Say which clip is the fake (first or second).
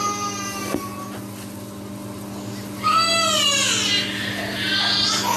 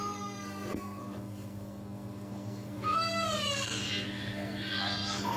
second